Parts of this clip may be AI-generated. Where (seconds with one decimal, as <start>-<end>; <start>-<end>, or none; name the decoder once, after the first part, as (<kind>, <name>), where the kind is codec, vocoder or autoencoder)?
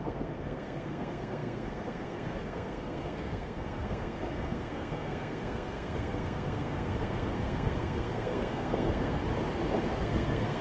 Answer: 0.0-9.2 (codec, SNAC); 9.9-10.6